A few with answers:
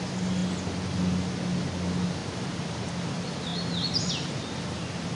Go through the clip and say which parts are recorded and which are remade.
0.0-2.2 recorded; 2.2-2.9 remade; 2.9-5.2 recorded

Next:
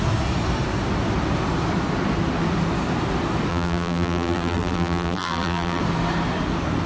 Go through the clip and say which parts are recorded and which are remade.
0.0-3.5 recorded; 3.5-5.8 remade; 5.8-6.9 recorded

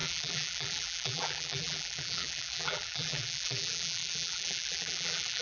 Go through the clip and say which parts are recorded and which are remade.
0.0-5.4 remade

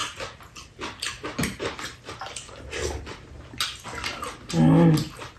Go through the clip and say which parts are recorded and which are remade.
0.0-5.4 recorded

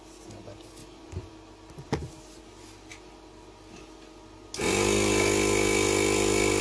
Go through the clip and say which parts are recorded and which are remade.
0.0-0.8 recorded; 0.8-1.3 remade; 1.3-6.6 recorded

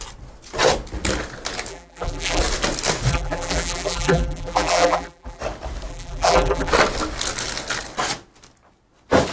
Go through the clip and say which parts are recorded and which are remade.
0.0-1.7 recorded; 1.7-2.4 remade; 2.4-3.1 recorded; 3.1-5.4 remade; 5.4-5.9 recorded; 5.9-6.7 remade; 6.7-9.3 recorded

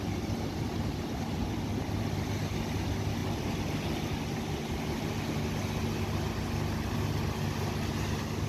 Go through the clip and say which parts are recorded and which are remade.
0.0-8.5 recorded

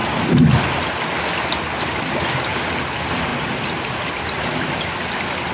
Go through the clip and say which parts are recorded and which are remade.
0.0-5.5 recorded